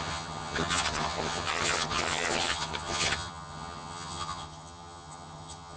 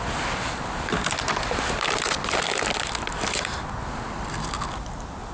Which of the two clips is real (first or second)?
second